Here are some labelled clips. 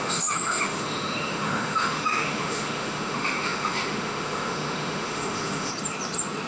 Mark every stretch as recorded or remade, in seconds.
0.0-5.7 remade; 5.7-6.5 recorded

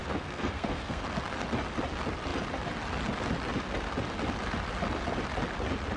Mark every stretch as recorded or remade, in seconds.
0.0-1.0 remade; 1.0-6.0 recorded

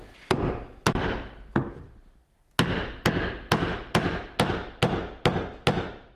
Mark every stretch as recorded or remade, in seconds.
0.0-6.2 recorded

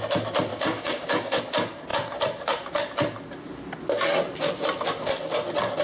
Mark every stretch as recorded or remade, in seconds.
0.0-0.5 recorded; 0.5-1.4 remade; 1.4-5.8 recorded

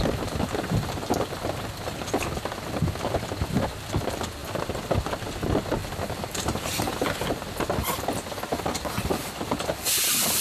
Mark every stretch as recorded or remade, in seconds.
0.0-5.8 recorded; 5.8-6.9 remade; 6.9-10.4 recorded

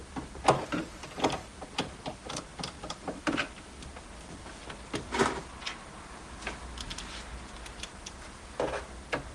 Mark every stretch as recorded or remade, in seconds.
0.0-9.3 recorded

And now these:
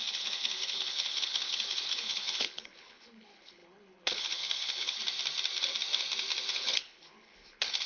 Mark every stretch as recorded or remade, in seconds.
0.0-5.0 remade; 5.0-6.5 recorded; 6.5-7.9 remade

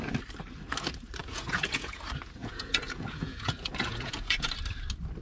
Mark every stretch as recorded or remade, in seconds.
0.0-1.2 recorded; 1.2-2.0 remade; 2.0-2.4 recorded; 2.4-4.5 remade; 4.5-5.2 recorded